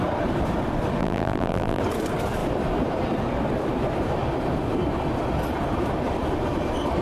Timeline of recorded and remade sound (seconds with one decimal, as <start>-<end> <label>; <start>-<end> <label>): 0.0-1.0 recorded; 1.0-1.8 remade; 1.8-7.0 recorded